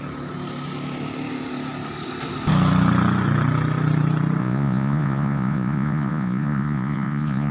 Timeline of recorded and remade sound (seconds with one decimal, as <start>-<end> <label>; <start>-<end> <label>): 0.0-4.4 recorded; 4.4-7.5 remade